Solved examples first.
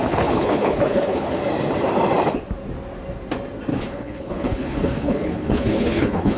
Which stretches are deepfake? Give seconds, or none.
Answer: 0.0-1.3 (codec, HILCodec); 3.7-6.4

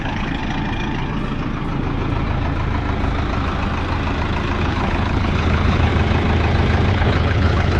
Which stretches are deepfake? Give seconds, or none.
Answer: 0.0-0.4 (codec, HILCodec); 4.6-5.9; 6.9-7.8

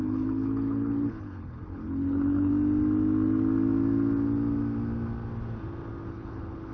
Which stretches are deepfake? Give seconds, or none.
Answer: 0.0-2.5 (codec, HILCodec); 6.1-6.7

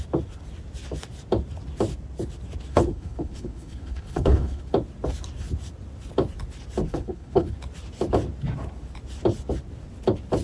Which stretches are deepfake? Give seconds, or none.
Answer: 2.7-4.6 (codec, HILCodec); 6.9-7.6

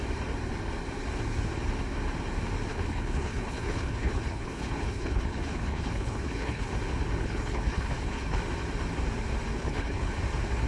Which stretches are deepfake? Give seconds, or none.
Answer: 2.7-6.7 (codec, HILCodec); 7.2-8.4; 9.5-10.1

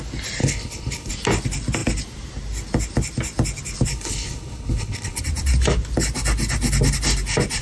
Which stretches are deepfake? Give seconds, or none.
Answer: 0.4-1.1 (codec, HILCodec); 3.9-5.2